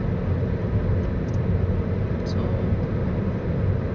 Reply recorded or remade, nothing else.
recorded